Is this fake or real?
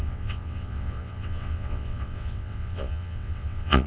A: fake